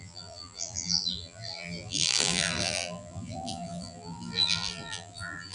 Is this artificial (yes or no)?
yes